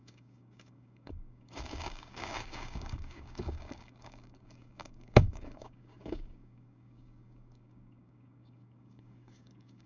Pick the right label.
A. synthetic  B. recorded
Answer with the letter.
A